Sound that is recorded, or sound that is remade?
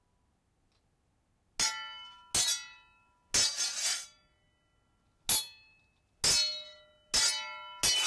recorded